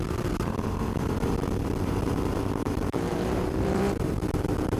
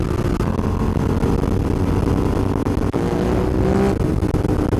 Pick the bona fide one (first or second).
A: second